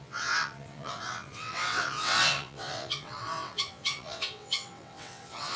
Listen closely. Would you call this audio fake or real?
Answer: fake